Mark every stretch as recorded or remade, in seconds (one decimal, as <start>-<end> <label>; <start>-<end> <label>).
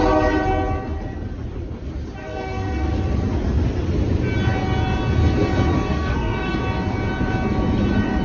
0.0-2.2 recorded; 2.2-2.9 remade; 2.9-5.9 recorded; 5.9-6.6 remade; 6.6-8.2 recorded